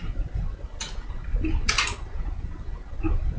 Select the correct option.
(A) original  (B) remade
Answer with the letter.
A